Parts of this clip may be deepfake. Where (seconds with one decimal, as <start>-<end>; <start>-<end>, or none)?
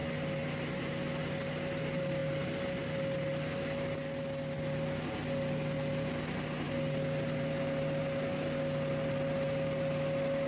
none